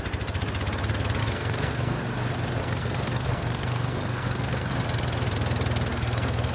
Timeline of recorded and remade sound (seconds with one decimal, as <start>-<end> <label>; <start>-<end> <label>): 0.0-1.2 recorded; 1.2-2.0 remade; 2.0-2.6 recorded; 2.6-4.7 remade; 4.7-5.9 recorded; 5.9-6.5 remade